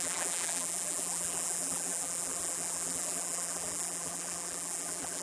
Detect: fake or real fake